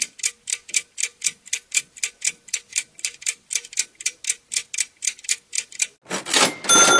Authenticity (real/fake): real